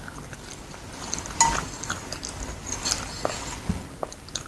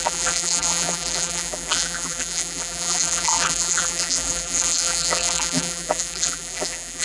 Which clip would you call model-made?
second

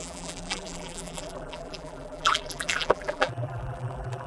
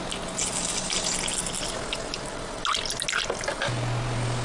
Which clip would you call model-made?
first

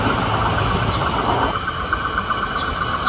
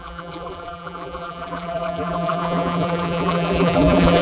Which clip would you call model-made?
second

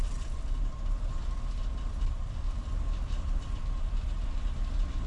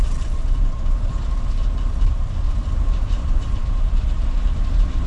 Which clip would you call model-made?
second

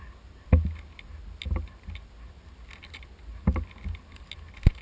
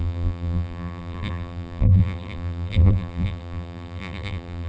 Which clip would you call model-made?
second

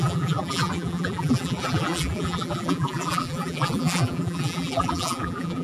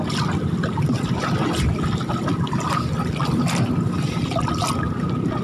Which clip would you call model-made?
first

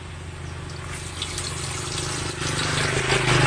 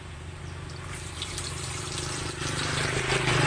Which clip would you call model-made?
second